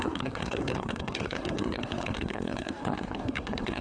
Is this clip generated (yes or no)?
yes